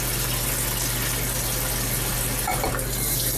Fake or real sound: real